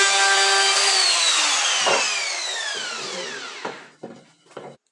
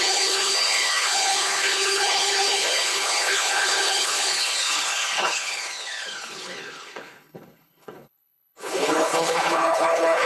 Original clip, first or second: first